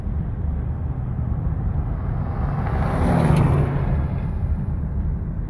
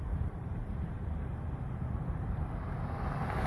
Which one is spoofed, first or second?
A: second